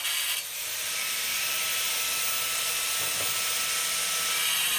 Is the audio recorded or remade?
recorded